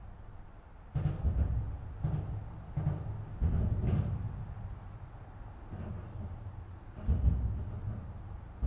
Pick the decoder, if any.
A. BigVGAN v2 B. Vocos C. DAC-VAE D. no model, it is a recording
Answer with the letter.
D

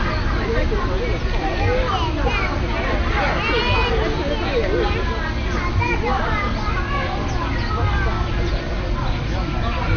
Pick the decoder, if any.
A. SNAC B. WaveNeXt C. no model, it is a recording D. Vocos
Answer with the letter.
C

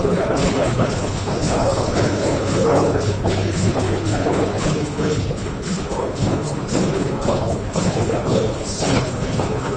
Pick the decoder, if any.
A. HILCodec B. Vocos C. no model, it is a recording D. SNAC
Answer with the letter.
A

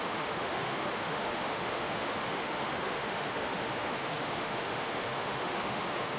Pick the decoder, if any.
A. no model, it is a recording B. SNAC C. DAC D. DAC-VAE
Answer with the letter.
D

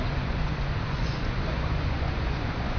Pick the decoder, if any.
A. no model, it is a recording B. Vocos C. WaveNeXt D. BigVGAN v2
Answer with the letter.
B